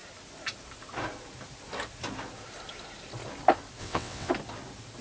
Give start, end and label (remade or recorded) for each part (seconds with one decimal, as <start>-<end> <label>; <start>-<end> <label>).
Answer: 0.0-3.8 recorded; 3.8-4.3 remade; 4.3-5.0 recorded